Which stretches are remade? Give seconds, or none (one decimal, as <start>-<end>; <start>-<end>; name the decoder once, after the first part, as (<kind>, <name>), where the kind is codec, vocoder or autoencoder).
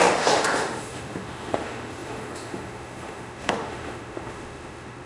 0.0-5.1 (autoencoder, DAC-VAE)